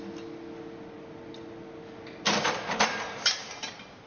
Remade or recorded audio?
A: recorded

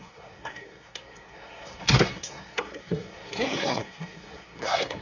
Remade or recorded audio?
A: remade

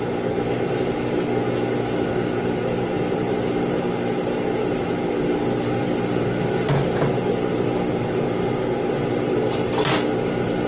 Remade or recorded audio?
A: recorded